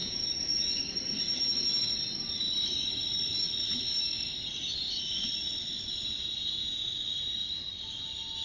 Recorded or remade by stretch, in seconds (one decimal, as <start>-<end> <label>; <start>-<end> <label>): 0.0-0.7 remade; 0.7-6.4 recorded; 6.4-6.9 remade; 6.9-8.4 recorded